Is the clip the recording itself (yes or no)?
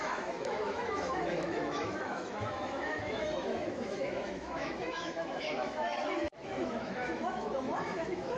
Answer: no